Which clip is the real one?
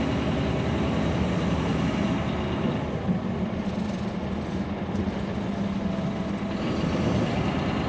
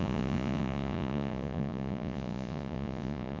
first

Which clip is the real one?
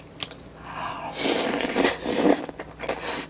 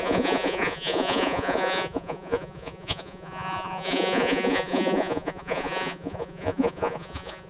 first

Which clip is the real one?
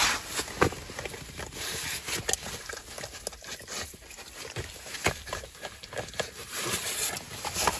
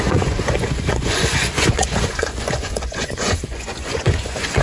first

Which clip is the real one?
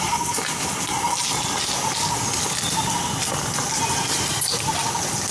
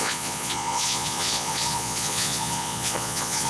first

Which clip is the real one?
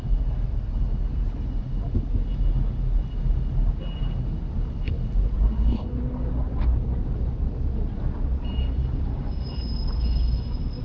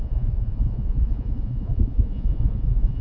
first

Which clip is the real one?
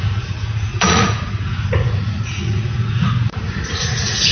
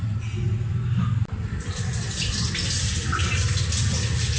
second